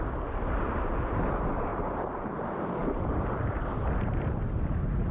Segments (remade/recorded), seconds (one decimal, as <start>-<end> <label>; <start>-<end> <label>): 0.0-1.7 recorded; 1.7-2.3 remade; 2.3-2.8 recorded; 2.8-5.1 remade